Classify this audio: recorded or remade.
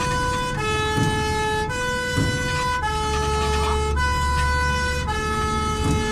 recorded